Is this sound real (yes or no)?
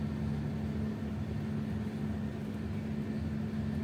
yes